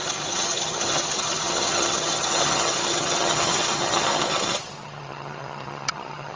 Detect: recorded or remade remade